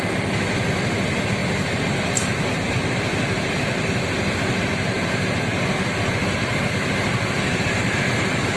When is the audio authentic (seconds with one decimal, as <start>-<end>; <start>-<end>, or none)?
0.0-1.4; 2.1-8.6